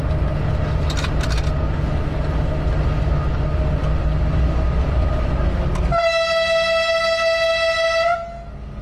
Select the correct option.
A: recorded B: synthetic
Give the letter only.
A